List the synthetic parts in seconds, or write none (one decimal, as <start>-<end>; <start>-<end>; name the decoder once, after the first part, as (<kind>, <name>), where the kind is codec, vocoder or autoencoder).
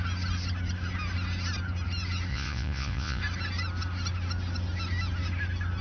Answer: 2.3-3.2 (vocoder, Vocos)